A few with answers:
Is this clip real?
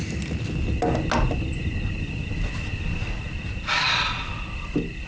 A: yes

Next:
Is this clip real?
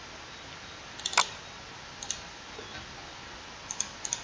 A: yes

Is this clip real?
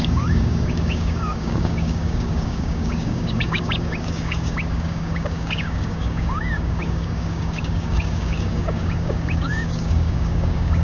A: no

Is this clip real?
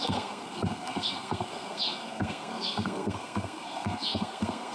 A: no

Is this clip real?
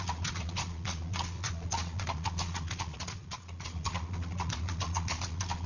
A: no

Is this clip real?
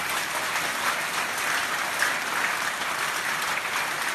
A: yes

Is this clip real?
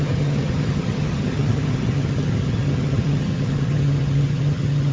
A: no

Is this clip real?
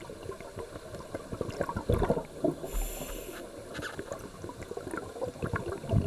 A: yes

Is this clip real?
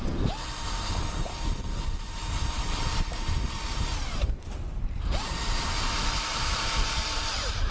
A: no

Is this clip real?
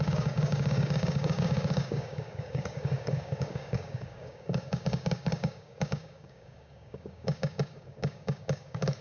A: no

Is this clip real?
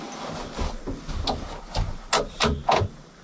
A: yes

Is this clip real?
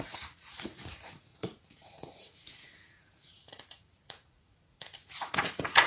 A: no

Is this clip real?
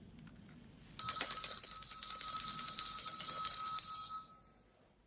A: yes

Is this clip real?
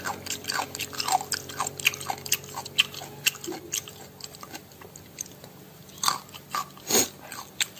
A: yes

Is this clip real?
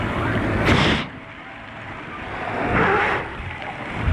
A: no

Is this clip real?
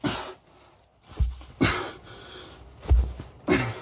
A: yes